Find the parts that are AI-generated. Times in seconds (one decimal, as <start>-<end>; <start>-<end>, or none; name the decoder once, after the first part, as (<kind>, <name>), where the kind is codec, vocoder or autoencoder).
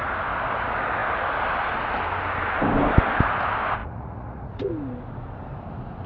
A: 3.8-4.7 (vocoder, Vocos)